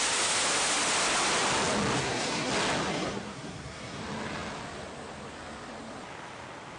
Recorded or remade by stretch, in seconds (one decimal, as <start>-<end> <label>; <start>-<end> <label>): 0.0-2.0 recorded; 2.0-2.5 remade; 2.5-2.9 recorded; 2.9-4.0 remade; 4.0-6.8 recorded

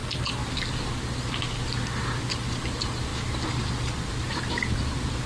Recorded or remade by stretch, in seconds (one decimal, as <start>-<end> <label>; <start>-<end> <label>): 0.0-5.3 recorded

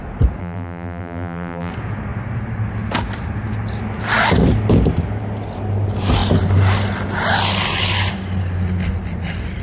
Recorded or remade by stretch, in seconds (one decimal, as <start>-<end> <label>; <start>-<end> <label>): 0.0-0.4 recorded; 0.4-1.7 remade; 1.7-9.6 recorded

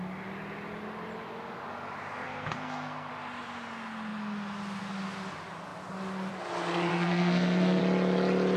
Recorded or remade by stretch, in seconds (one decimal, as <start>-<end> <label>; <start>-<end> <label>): 0.0-2.2 recorded; 2.2-3.1 remade; 3.1-6.9 recorded; 6.9-7.8 remade; 7.8-8.6 recorded

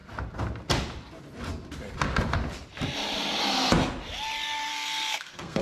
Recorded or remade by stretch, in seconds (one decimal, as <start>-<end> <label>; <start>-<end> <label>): 0.0-4.7 recorded; 4.7-5.6 remade